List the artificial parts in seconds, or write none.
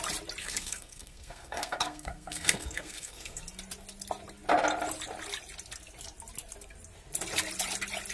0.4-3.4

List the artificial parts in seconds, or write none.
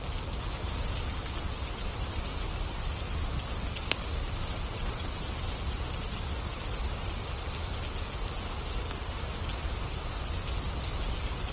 4.4-5.1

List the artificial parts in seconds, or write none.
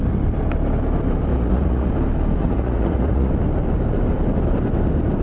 1.3-1.9; 2.4-3.3